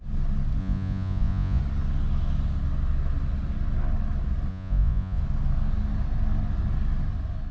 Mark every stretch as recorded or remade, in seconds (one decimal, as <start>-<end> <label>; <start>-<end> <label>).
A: 0.0-0.6 recorded; 0.6-1.6 remade; 1.6-4.5 recorded; 4.5-5.2 remade; 5.2-7.5 recorded